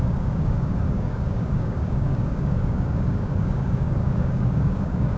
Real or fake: fake